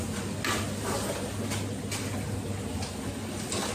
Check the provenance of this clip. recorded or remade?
recorded